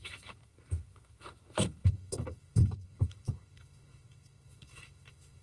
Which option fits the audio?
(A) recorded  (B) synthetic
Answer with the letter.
B